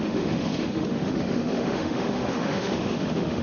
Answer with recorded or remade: remade